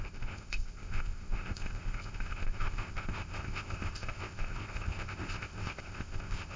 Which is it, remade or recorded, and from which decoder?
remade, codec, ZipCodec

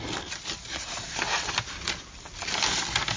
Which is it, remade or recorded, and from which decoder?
recorded